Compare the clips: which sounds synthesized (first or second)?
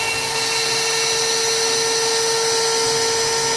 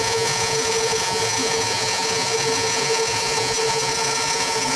second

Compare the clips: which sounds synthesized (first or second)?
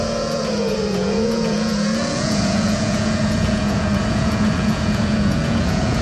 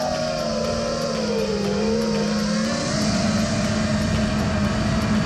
first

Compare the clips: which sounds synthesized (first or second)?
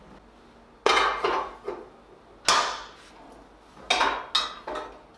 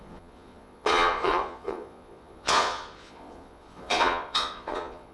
second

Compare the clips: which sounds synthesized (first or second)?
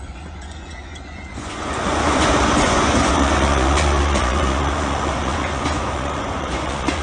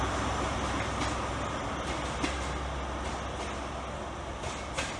first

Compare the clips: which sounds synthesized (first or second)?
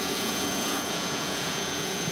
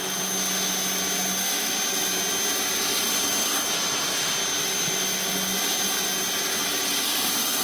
first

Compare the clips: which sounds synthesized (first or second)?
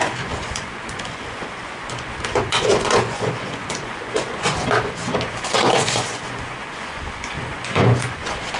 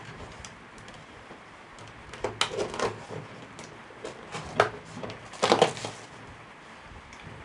first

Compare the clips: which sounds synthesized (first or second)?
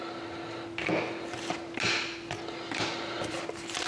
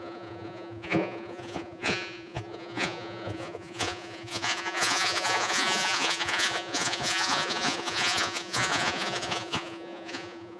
second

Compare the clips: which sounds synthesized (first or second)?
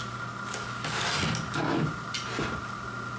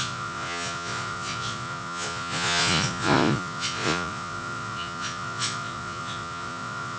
second